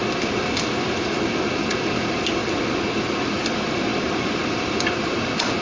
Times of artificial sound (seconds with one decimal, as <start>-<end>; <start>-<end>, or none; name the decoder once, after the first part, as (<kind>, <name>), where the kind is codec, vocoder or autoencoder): 0.0-2.4 (vocoder, BigVGAN v2); 3.0-5.6